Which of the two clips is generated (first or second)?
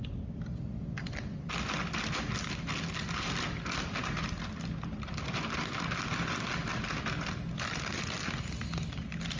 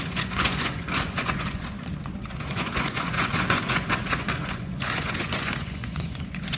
second